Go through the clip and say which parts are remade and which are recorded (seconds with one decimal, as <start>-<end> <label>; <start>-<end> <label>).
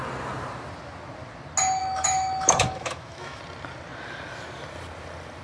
0.0-1.8 recorded; 1.8-3.4 remade; 3.4-5.4 recorded